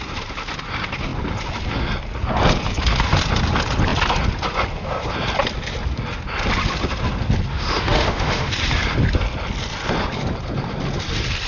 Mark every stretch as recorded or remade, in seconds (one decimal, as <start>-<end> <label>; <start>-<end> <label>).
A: 0.0-7.5 recorded; 7.5-8.5 remade; 8.5-11.5 recorded